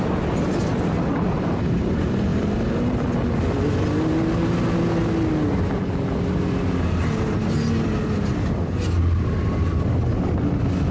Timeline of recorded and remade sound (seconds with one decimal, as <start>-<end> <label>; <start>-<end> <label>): 0.0-10.9 recorded